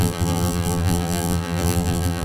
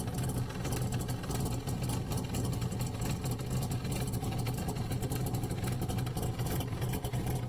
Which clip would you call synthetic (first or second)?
first